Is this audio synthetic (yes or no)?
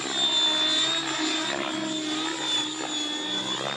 no